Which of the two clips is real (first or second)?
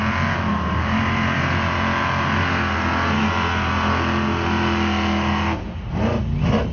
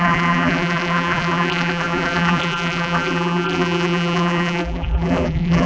first